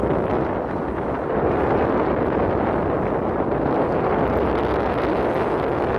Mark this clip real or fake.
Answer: real